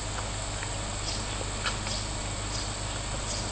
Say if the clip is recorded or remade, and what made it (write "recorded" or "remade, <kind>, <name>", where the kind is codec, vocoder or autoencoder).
recorded